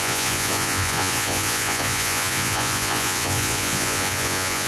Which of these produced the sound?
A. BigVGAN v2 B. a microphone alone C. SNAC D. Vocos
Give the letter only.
D